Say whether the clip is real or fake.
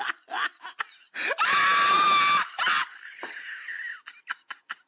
real